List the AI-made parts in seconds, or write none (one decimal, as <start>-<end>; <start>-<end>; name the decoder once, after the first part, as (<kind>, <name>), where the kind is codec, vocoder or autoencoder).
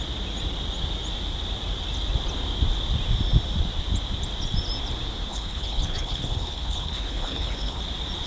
5.3-7.8 (codec, HILCodec)